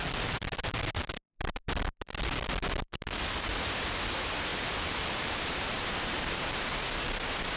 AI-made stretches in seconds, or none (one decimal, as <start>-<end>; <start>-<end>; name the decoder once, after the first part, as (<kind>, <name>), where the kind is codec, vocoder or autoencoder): 4.5-6.5 (vocoder, BigVGAN v2)